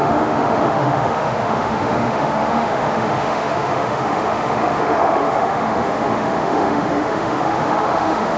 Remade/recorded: remade